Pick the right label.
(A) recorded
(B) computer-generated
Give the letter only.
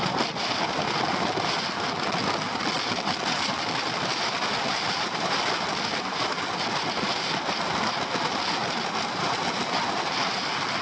A